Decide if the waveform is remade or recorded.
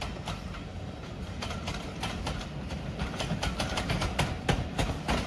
recorded